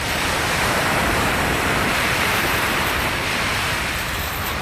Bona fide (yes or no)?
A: no